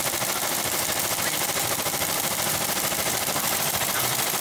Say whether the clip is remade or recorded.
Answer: remade